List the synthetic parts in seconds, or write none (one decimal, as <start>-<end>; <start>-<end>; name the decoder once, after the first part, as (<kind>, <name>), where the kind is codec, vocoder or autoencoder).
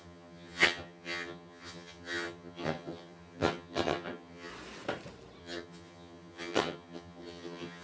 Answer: 0.0-4.5 (vocoder, HiFi-GAN); 5.4-7.8